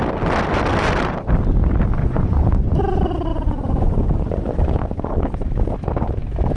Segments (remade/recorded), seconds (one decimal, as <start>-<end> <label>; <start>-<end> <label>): 0.0-2.0 recorded; 2.0-2.8 remade; 2.8-3.3 recorded; 3.3-5.1 remade; 5.1-6.6 recorded